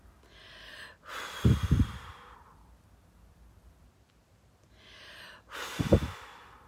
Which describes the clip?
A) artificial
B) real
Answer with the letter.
A